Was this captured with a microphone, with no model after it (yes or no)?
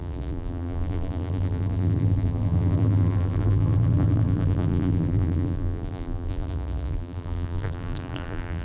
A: no